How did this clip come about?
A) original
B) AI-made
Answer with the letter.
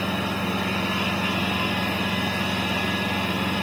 A